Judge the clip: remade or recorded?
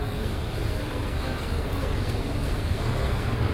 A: remade